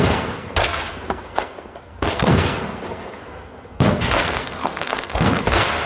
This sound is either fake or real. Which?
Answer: fake